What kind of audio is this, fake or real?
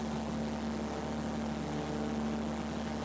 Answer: real